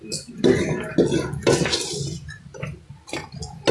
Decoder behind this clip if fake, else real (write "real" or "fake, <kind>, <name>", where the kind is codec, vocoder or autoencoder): real